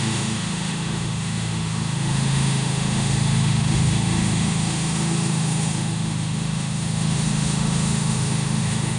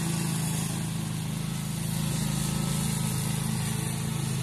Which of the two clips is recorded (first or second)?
second